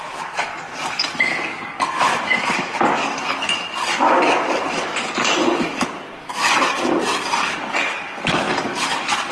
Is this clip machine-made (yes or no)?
yes